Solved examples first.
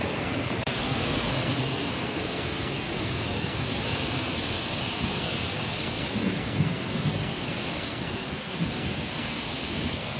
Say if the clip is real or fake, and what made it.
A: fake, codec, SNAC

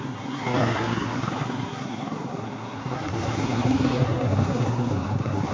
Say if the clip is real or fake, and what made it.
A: fake, codec, SNAC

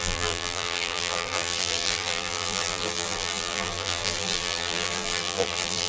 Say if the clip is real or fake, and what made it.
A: fake, vocoder, BigVGAN v2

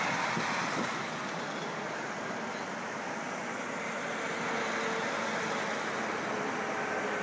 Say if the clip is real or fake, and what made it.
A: real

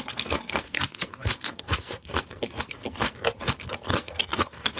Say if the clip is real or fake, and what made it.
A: fake, codec, SNAC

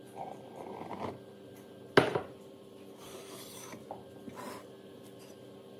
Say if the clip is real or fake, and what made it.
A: real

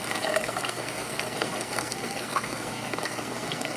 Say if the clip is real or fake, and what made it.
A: fake, codec, SNAC